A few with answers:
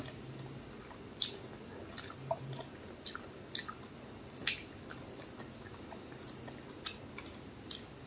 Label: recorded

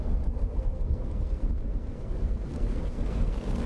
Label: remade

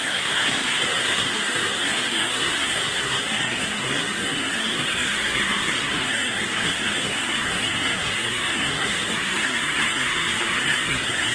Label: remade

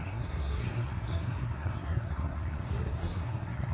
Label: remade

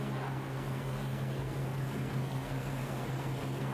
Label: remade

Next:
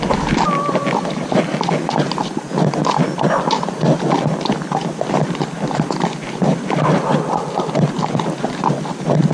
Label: recorded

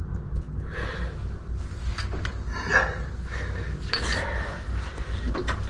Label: recorded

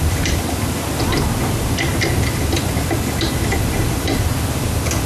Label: recorded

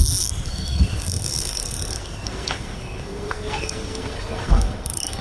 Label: remade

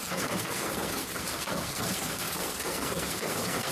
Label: remade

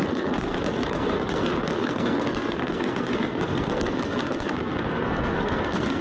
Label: remade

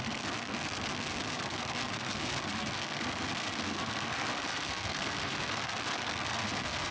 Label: remade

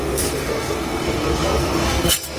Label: remade